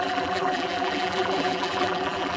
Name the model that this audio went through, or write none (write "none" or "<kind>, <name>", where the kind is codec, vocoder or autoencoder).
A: vocoder, BigVGAN v2